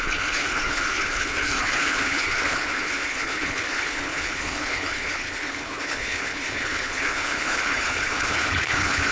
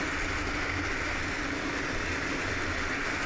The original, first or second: second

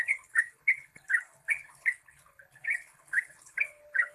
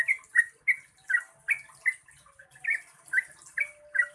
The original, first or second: second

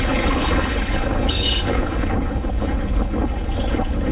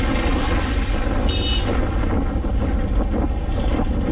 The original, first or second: second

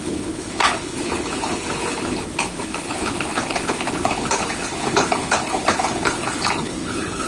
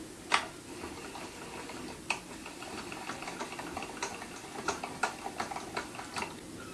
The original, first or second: second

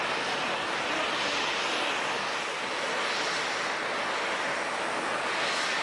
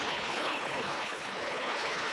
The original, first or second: first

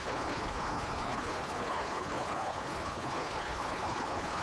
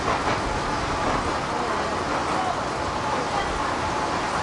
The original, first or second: second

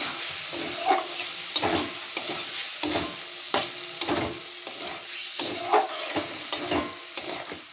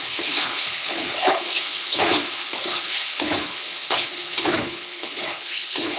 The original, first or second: first